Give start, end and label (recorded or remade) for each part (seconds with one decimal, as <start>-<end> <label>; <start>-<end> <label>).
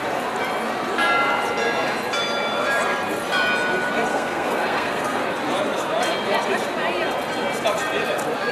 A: 0.0-4.1 recorded; 4.1-5.2 remade; 5.2-8.5 recorded